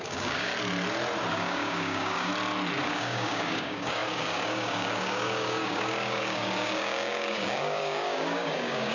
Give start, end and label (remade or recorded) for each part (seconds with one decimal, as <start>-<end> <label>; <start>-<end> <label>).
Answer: 0.0-0.5 remade; 0.5-1.3 recorded; 1.3-2.3 remade; 2.3-2.8 recorded; 2.8-8.9 remade